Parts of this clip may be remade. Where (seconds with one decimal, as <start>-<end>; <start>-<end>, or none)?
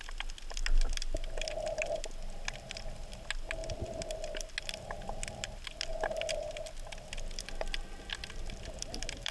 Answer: none